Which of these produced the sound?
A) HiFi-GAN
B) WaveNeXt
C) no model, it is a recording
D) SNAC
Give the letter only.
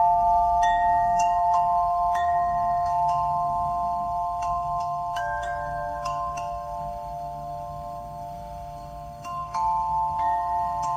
D